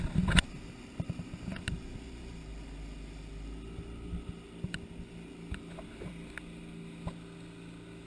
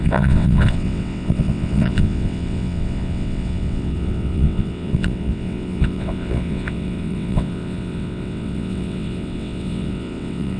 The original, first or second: first